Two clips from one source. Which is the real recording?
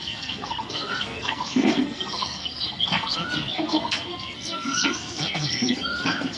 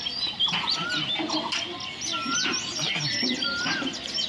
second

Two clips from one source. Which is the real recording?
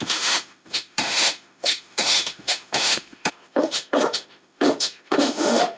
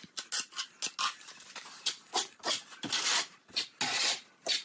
second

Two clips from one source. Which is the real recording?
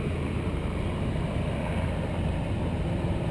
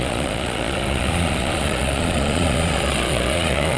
first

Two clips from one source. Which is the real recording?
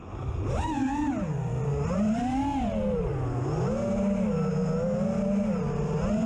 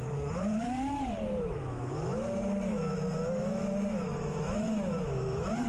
first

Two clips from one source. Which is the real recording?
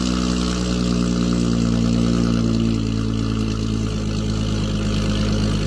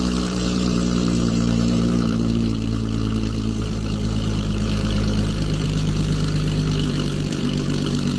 first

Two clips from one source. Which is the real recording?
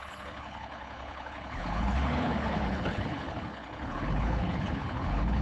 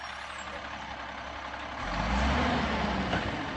second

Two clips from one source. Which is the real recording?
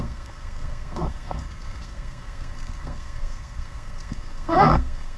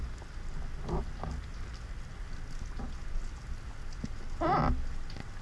second